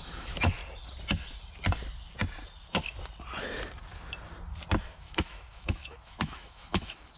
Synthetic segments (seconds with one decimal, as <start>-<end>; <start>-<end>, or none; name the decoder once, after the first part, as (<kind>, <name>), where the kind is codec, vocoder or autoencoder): 0.0-0.6 (autoencoder, DAC-VAE); 4.9-7.2